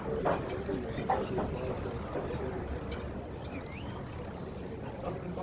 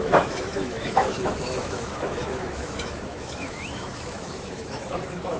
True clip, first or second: first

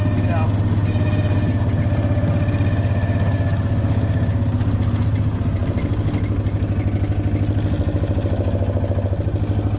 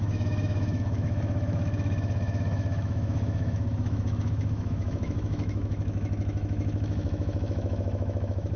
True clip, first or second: first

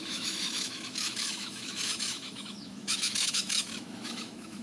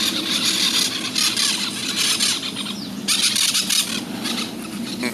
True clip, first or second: second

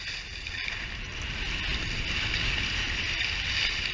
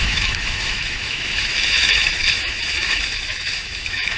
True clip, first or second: first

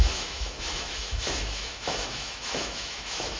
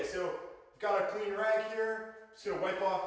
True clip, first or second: second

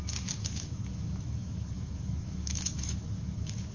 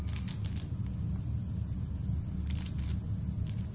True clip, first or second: second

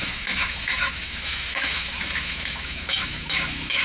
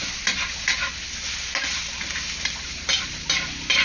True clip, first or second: second